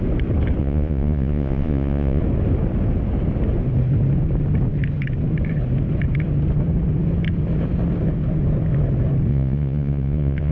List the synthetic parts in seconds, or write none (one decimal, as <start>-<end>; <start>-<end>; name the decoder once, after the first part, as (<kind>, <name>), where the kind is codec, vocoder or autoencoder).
0.6-2.2 (vocoder, Vocos); 9.3-10.5